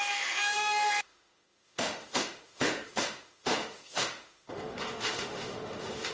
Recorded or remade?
remade